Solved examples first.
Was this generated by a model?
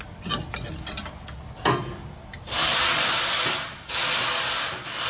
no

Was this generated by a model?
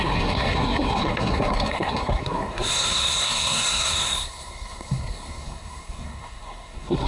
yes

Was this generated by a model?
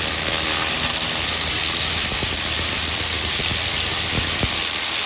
no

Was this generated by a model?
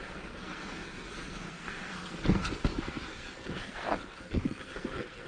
yes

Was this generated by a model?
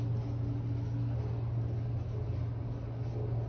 no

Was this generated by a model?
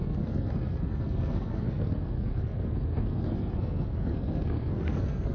yes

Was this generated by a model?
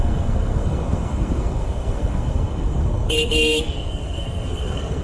yes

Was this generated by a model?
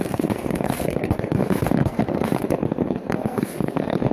yes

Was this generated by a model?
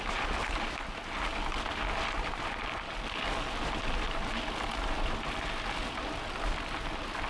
no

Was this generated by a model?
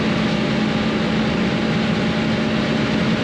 no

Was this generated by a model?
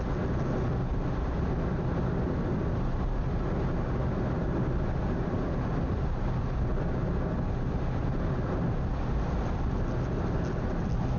no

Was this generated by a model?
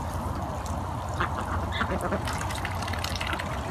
no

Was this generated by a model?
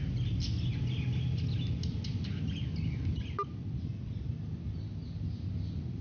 no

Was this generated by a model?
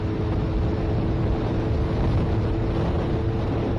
no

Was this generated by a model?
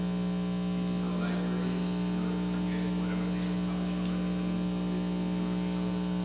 no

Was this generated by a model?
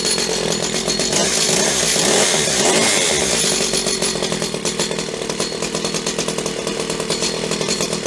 no